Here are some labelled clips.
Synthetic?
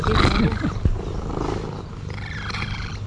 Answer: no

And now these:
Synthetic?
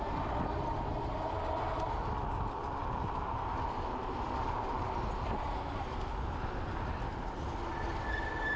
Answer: no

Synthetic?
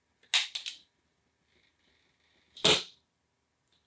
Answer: no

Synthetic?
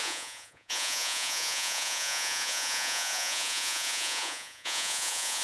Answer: yes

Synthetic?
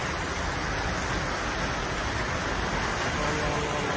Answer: no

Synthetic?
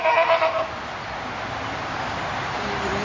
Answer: no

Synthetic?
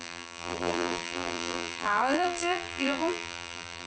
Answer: yes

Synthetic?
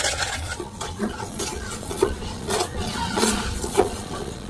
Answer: yes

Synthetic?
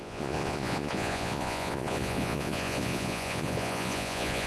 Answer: yes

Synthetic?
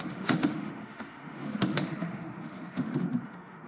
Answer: yes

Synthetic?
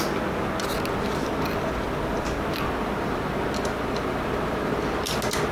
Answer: no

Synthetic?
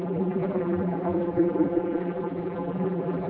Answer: yes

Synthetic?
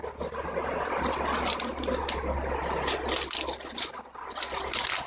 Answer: no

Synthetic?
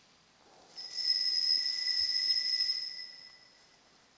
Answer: no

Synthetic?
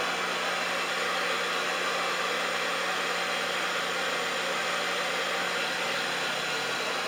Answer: no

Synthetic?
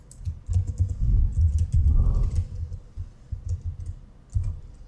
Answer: no